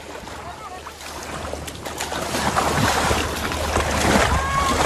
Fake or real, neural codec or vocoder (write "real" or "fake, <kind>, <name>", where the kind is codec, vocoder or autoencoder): real